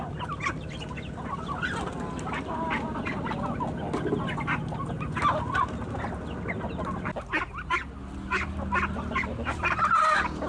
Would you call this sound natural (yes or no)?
yes